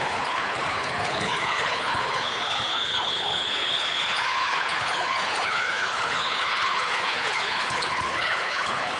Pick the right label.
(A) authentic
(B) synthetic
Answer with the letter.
B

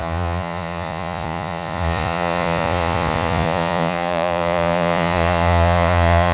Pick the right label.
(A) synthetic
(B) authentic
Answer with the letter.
A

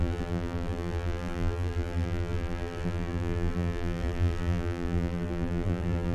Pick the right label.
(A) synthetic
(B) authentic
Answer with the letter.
A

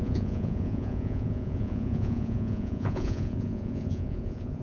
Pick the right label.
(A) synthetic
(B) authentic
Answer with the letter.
A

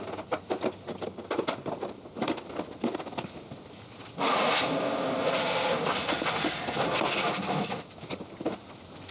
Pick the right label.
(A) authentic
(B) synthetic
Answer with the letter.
A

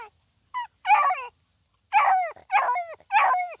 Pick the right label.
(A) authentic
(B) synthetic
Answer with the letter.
A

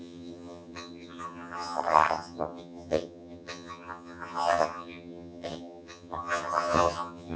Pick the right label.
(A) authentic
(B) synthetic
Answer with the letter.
B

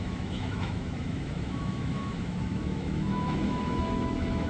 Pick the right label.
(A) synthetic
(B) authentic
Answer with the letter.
A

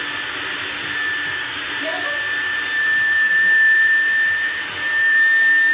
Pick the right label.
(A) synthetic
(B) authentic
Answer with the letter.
A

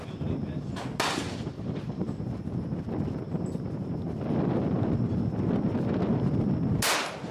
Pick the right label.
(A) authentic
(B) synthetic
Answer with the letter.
A